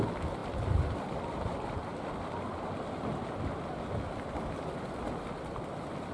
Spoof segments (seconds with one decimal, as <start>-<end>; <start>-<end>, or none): none